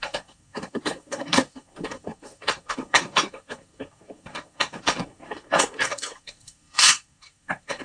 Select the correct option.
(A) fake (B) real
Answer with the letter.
A